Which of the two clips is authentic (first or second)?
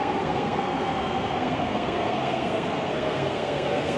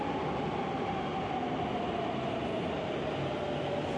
second